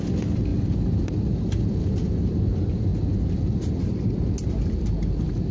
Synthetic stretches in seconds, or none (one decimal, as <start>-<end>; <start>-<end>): none